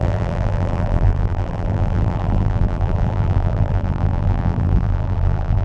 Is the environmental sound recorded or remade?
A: remade